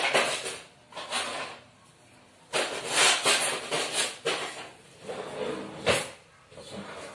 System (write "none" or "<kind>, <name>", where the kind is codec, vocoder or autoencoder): none